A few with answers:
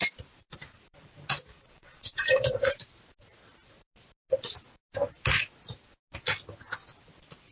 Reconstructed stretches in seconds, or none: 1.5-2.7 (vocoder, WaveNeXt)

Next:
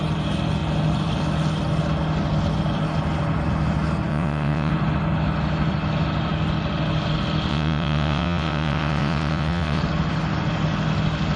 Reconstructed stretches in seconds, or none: 4.1-4.7 (vocoder, WaveNeXt); 7.5-9.8

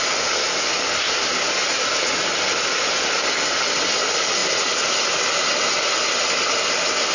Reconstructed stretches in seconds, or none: none

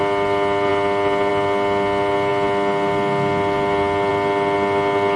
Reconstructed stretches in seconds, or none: none

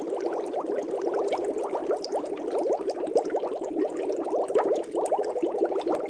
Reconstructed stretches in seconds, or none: none